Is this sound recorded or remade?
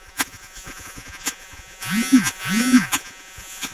remade